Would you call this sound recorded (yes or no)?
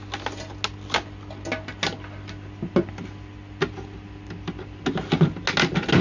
yes